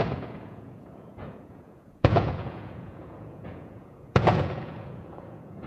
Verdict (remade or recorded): remade